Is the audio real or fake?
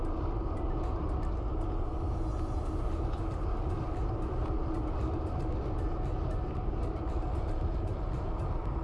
real